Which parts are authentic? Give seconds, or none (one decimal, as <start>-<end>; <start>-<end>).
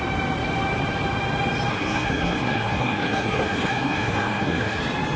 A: 0.0-1.7; 4.8-5.2